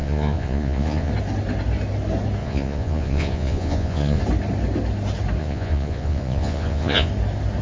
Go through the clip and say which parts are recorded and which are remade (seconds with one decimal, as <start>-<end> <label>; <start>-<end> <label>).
0.0-1.1 remade; 1.1-2.4 recorded; 2.4-4.2 remade; 4.2-5.4 recorded; 5.4-7.1 remade; 7.1-7.6 recorded